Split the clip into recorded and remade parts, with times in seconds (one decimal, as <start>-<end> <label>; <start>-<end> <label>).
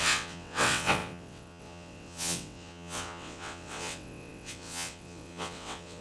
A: 0.0-6.0 remade